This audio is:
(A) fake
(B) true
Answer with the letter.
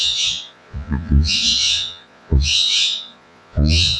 A